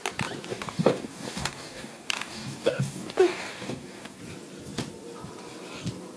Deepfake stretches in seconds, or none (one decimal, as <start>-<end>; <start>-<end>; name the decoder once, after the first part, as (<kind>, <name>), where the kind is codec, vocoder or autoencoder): 0.5-4.2 (codec, DAC)